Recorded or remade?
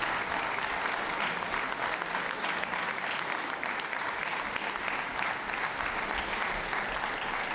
recorded